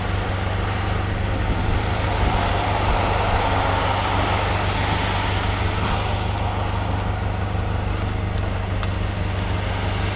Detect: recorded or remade recorded